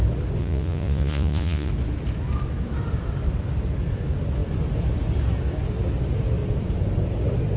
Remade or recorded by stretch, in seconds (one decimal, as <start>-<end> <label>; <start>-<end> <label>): 0.0-0.4 recorded; 0.4-1.7 remade; 1.7-7.6 recorded